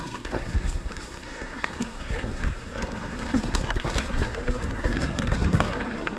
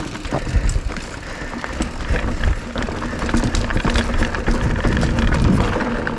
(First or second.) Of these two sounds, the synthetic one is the first